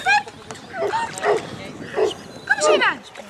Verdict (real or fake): real